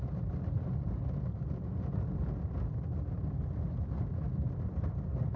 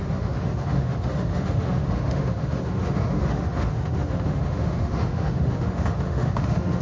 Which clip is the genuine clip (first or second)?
first